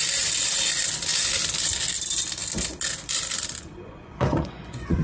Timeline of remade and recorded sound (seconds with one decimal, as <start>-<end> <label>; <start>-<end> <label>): 0.0-3.7 recorded; 3.7-5.0 remade